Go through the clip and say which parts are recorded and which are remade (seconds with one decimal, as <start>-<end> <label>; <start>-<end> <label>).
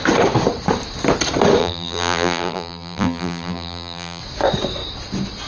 0.0-1.6 recorded; 1.6-4.2 remade; 4.2-5.5 recorded